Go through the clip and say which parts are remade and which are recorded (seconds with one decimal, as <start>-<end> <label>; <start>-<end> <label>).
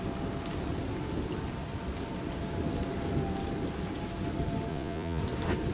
0.0-4.7 recorded; 4.7-5.2 remade; 5.2-5.7 recorded